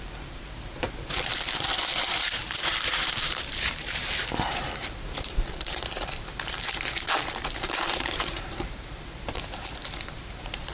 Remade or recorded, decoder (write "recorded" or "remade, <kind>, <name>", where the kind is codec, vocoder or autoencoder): remade, vocoder, BigVGAN v2